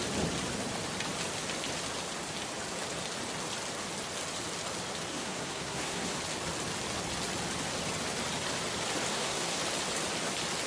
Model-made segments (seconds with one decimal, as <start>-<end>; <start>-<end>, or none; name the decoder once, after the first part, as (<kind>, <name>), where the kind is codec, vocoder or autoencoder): 5.1-6.2 (codec, SNAC); 9.1-9.6